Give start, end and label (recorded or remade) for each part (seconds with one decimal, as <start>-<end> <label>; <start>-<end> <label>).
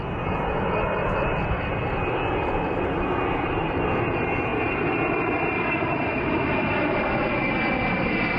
0.0-4.5 recorded; 4.5-7.4 remade; 7.4-8.4 recorded